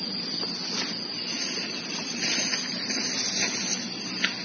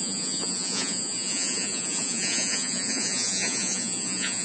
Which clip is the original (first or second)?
first